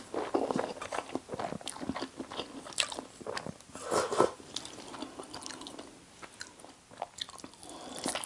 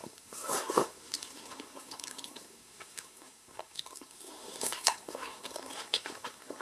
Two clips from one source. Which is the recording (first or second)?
first